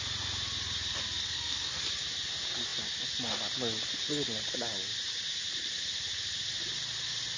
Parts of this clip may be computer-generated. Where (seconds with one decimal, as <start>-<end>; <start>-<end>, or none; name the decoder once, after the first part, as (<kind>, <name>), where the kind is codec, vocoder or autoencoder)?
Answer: 1.2-1.8 (codec, SNAC)